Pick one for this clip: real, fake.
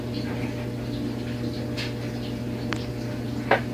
real